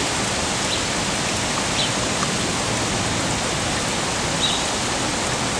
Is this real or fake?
real